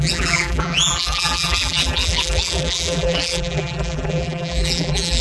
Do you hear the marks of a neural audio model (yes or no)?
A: yes